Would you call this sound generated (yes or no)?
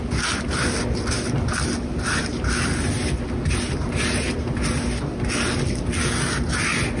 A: no